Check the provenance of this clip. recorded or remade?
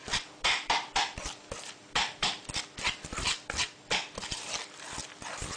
recorded